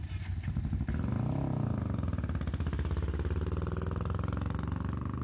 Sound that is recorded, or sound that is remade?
recorded